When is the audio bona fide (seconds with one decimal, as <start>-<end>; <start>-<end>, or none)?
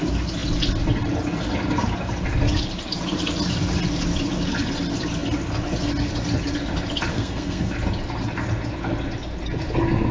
0.0-7.1; 7.7-10.1